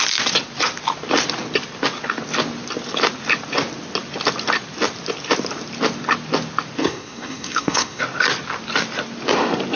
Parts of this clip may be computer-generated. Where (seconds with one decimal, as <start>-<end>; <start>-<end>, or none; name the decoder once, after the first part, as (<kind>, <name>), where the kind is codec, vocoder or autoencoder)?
6.8-8.0 (codec, SNAC)